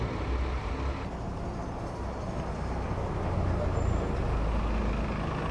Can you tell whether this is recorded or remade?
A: recorded